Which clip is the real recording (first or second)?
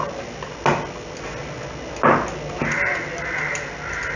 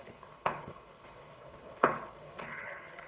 first